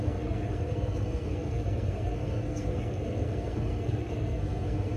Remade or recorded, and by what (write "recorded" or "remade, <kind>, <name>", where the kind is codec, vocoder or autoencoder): remade, codec, SNAC